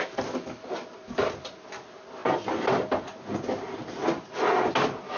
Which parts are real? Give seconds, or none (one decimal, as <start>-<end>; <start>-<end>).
0.0-5.2